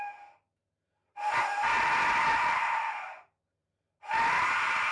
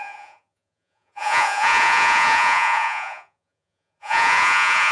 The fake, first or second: second